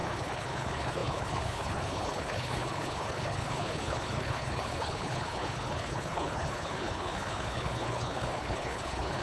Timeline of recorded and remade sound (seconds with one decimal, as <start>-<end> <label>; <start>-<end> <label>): 0.0-9.2 remade